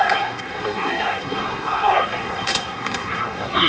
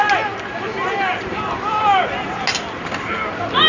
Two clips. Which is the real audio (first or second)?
second